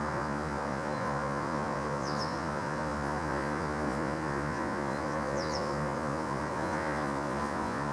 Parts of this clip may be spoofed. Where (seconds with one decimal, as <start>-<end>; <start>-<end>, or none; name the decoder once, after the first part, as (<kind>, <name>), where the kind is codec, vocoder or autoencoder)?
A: 0.0-7.9 (vocoder, Vocos)